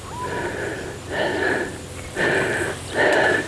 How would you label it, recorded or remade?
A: recorded